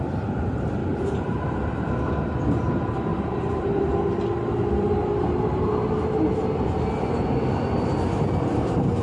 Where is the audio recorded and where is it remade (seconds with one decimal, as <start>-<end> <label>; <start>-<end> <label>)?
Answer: 0.0-0.8 recorded; 0.8-1.9 remade; 1.9-3.1 recorded; 3.1-3.9 remade; 3.9-5.0 recorded; 5.0-5.7 remade; 5.7-9.0 recorded